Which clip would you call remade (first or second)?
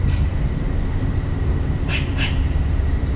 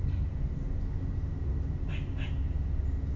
first